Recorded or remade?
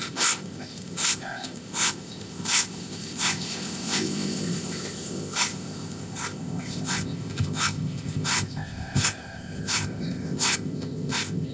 remade